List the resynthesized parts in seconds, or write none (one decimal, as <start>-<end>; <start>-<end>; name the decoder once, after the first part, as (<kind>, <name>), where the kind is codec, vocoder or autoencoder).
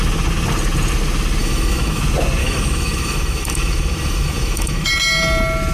1.4-2.0 (autoencoder, DAC-VAE); 2.4-4.9